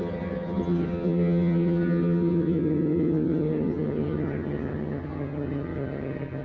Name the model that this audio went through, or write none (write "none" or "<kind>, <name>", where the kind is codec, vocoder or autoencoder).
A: vocoder, HiFi-GAN